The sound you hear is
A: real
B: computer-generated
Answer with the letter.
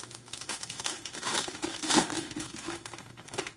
B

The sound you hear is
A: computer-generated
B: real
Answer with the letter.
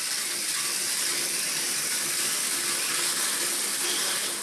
B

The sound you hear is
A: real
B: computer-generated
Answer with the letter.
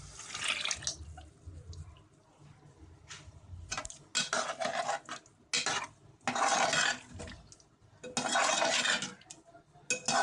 A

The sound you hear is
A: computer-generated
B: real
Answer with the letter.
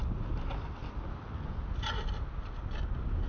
B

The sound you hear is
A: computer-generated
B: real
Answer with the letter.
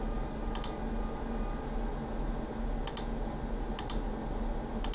B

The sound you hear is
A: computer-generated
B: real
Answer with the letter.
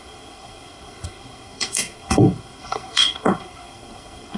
A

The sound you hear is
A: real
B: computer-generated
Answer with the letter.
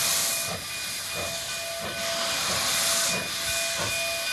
A